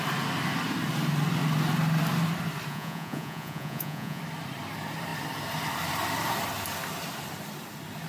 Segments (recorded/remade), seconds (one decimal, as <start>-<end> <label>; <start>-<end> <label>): 0.0-2.7 recorded; 2.7-4.2 remade; 4.2-8.1 recorded